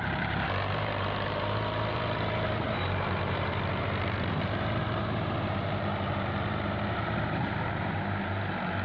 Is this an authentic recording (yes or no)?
no